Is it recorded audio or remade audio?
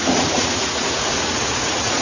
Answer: remade